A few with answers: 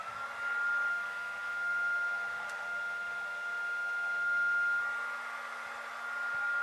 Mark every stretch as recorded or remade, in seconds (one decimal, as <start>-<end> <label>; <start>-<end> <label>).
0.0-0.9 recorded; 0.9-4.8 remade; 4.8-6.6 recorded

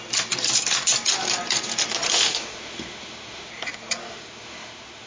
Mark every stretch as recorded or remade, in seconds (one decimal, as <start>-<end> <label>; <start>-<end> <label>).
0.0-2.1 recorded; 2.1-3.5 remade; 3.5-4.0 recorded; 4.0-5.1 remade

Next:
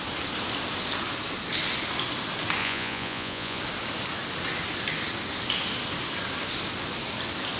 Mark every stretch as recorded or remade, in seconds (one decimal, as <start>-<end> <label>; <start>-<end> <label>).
0.0-2.6 recorded; 2.6-3.6 remade; 3.6-7.6 recorded